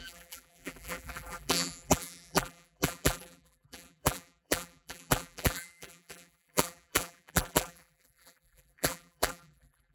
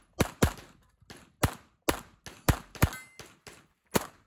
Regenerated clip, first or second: first